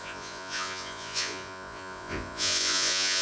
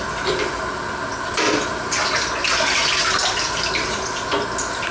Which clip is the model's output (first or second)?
first